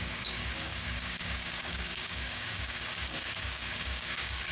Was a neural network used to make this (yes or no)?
yes